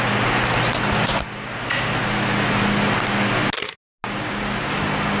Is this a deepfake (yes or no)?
no